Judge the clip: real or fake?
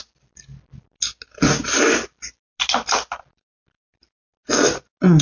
real